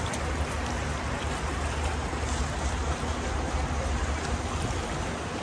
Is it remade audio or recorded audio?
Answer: recorded